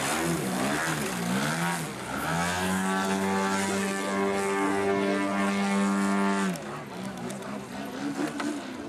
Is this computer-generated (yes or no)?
no